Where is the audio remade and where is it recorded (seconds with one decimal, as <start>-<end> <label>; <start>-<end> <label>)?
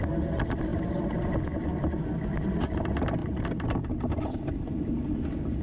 0.0-0.7 recorded; 0.7-1.2 remade; 1.2-3.2 recorded; 3.2-4.9 remade; 4.9-5.6 recorded